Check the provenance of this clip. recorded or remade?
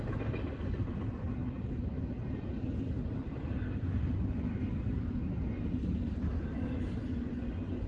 recorded